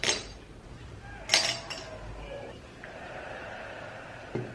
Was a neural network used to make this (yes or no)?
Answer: no